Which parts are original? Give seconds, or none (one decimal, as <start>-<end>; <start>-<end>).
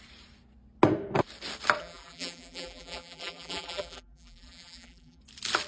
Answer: 0.0-1.8; 5.2-5.7